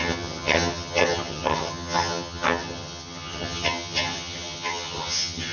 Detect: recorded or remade remade